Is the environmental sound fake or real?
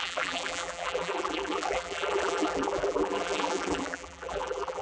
fake